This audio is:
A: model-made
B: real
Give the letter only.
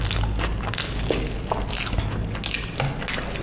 B